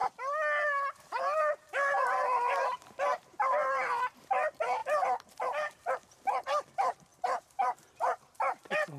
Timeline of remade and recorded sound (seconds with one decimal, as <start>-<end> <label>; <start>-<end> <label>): 0.0-1.0 recorded; 1.0-9.0 remade